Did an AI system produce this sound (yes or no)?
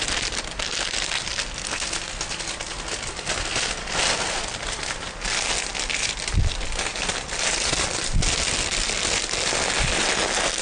no